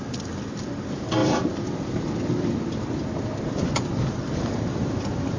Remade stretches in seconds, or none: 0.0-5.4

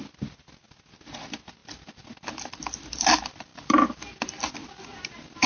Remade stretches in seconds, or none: 3.5-4.5

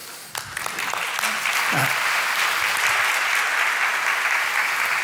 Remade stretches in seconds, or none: none

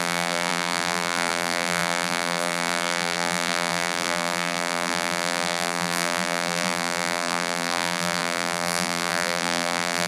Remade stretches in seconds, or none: 0.0-10.1

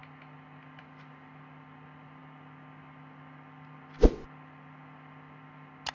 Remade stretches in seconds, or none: none

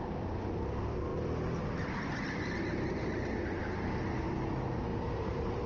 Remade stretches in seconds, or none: 4.9-5.7

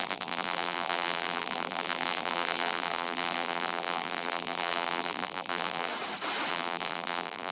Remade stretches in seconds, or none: 0.0-5.9; 6.5-7.5

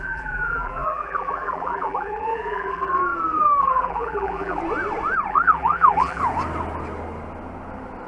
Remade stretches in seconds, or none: 0.0-3.0; 3.6-4.6; 5.3-6.2